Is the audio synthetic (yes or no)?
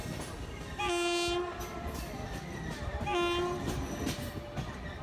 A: no